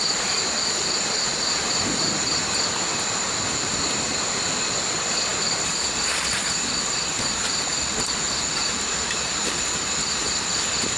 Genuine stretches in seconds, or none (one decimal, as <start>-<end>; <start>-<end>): 0.0-5.3; 6.2-11.0